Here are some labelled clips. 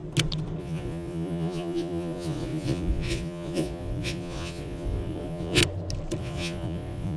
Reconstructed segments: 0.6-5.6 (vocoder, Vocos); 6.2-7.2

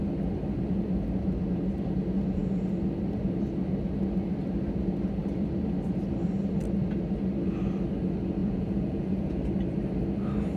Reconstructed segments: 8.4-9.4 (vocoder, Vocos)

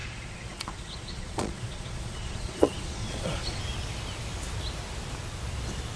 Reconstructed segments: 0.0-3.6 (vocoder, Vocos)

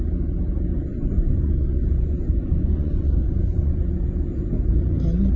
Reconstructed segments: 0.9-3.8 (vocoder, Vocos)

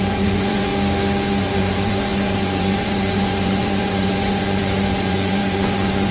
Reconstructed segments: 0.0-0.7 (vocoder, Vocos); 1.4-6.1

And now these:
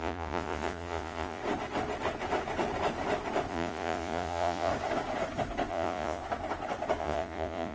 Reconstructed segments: 0.0-1.4 (vocoder, Vocos); 3.5-4.7; 5.7-6.2; 7.0-7.7